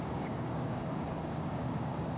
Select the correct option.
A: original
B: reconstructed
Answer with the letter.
B